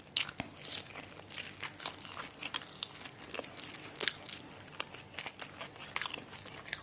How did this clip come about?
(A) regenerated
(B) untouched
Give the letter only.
B